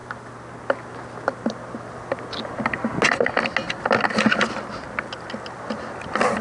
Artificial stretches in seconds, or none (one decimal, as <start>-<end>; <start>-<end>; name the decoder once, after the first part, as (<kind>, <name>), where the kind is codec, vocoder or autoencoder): none